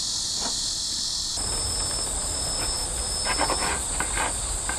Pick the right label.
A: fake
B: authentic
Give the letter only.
B